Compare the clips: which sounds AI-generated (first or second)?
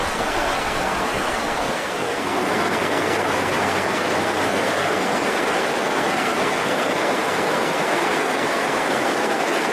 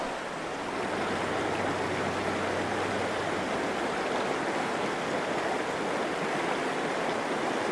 first